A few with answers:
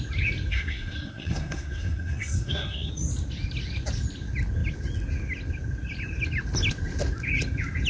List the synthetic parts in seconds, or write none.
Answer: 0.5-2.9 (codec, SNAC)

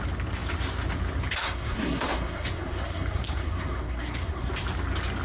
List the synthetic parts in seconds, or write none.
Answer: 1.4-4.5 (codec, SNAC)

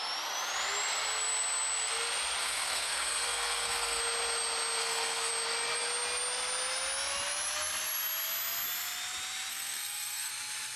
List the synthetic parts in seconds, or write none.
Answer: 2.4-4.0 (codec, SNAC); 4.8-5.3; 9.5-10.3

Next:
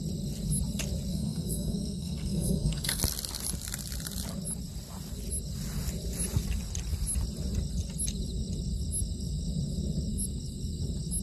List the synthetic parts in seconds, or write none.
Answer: 1.1-3.0 (codec, SNAC)

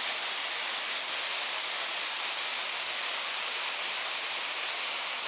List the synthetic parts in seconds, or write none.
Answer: none

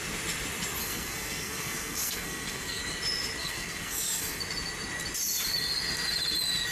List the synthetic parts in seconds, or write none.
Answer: 0.8-2.8 (codec, SNAC); 3.4-4.4

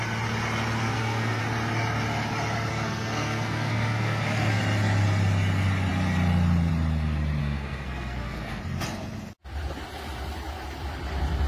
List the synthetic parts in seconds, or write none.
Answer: 0.8-1.4 (codec, SNAC); 2.7-4.6; 7.4-8.6